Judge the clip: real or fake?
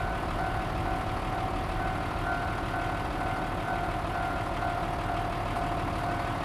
real